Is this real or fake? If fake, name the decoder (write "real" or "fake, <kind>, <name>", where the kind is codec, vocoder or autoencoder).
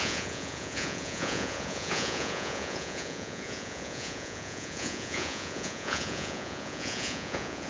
fake, vocoder, Vocos